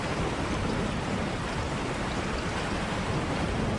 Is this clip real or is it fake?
real